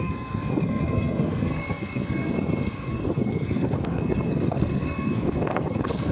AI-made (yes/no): yes